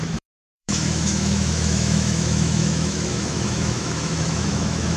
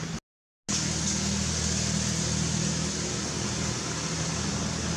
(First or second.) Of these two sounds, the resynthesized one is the first